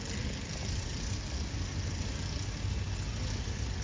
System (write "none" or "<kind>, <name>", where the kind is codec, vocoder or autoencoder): none